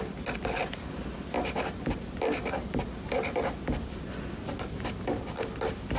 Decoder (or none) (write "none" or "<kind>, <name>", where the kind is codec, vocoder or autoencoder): none